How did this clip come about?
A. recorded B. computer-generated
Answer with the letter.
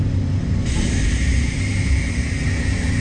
A